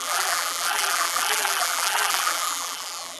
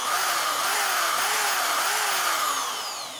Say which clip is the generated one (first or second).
first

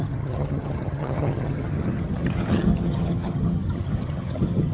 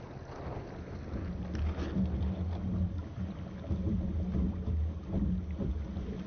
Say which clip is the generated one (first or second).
first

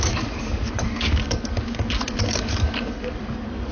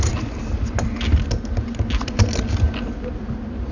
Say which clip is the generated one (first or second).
first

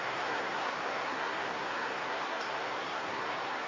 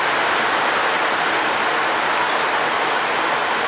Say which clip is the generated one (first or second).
first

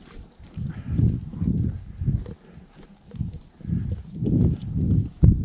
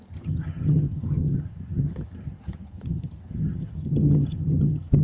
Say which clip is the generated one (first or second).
second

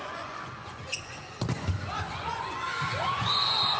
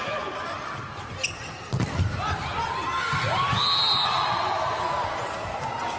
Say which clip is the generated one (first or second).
first